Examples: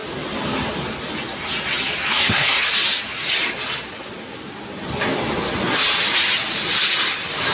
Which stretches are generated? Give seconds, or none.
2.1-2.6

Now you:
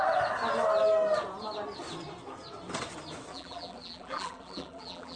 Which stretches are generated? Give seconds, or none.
3.3-5.2

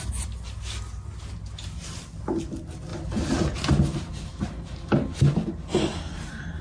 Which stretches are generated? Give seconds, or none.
none

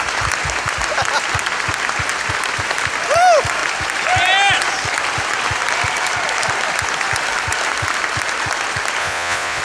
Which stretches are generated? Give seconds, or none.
9.0-9.6

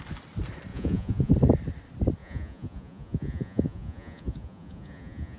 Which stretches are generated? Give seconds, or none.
0.7-1.3; 2.2-5.4